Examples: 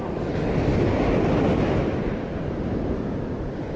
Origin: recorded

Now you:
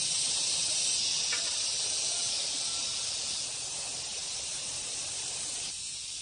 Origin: recorded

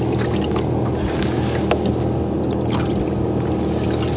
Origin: recorded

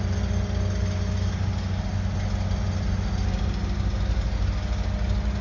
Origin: recorded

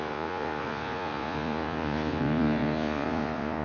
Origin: remade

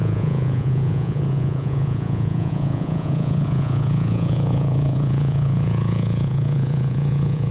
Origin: remade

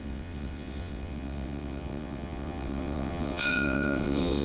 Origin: remade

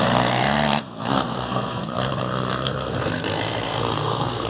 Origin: remade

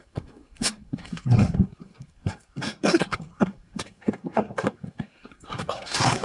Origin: remade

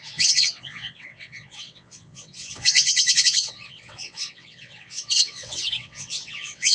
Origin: remade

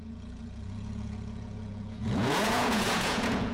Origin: remade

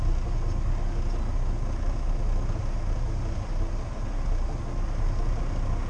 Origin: recorded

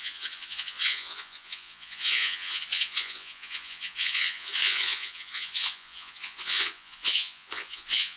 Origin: remade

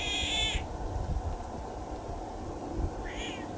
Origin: recorded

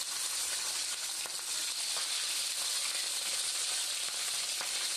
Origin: recorded